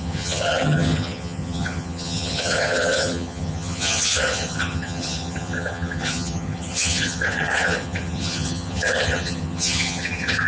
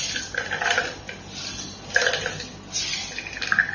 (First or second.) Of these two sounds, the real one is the second